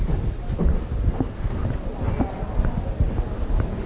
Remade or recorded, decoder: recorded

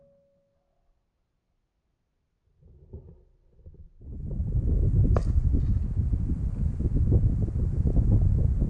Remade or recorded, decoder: recorded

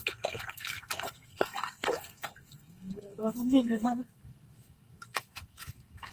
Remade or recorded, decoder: remade, codec, SNAC